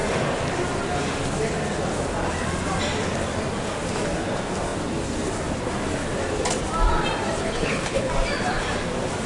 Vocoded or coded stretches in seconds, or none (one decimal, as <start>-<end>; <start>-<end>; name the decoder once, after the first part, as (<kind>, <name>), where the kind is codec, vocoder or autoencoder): 7.4-8.1 (codec, HILCodec)